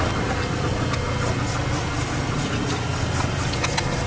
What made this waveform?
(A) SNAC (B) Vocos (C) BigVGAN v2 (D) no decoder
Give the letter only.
D